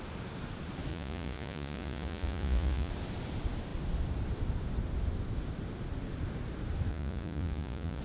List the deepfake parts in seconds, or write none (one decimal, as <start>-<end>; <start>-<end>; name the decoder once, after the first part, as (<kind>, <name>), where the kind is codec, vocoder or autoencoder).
0.9-2.9 (vocoder, Vocos); 6.9-8.0